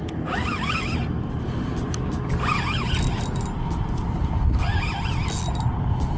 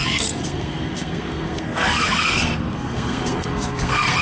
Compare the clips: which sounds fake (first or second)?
second